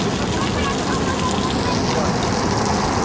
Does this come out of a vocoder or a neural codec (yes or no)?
no